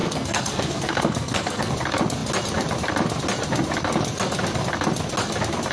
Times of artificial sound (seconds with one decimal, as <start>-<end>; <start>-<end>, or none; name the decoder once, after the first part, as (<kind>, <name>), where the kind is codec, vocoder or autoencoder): 0.0-1.7 (codec, SNAC)